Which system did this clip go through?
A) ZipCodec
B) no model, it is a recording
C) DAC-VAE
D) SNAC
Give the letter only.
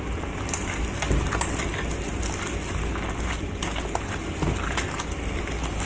B